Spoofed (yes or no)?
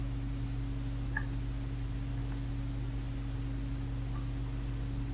no